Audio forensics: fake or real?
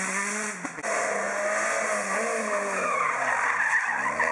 real